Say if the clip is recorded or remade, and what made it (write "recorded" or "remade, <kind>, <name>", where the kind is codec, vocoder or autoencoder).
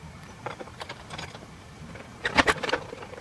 remade, vocoder, BigVGAN v2